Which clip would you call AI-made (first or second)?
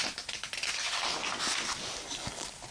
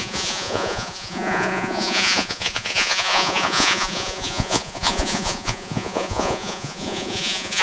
second